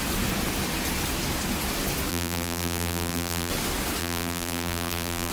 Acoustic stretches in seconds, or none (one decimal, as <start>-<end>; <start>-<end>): 0.0-2.1; 3.5-4.0